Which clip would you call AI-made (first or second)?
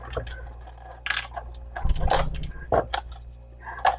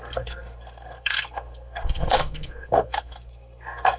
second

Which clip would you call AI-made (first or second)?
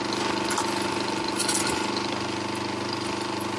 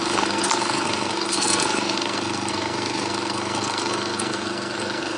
second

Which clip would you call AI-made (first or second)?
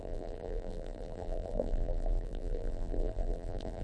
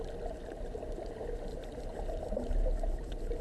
first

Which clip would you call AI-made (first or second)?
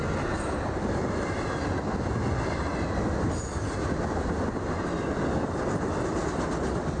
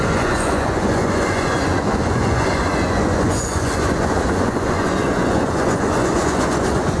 second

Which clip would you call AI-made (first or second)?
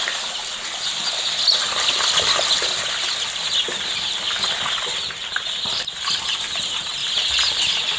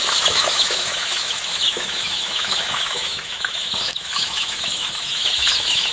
second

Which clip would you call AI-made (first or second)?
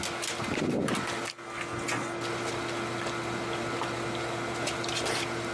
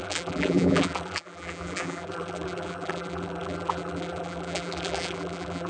second